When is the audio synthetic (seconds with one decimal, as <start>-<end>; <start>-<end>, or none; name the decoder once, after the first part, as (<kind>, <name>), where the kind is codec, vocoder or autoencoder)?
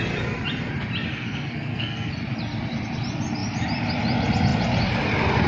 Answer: 1.1-2.1 (codec, SNAC)